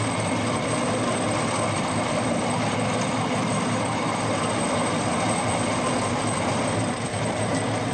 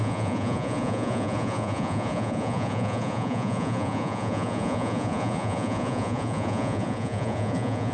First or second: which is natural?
first